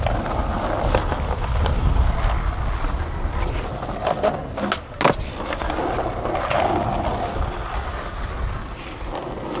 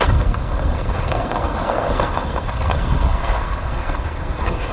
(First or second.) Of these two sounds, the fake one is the second